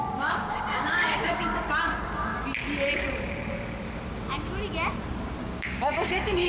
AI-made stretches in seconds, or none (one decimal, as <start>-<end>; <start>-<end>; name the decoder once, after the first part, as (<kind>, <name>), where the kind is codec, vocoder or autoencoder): 0.0-1.5 (codec, DAC); 5.4-6.5